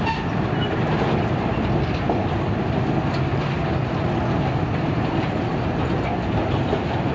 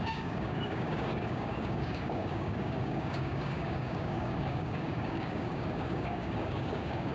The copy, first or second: second